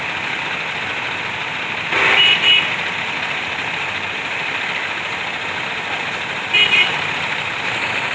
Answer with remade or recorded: recorded